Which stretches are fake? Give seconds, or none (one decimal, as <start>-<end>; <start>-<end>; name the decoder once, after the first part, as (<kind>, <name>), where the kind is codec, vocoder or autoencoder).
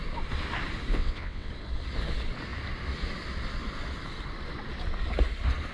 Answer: 0.9-1.5 (vocoder, WaveNeXt)